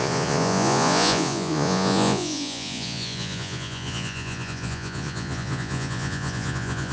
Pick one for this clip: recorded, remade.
remade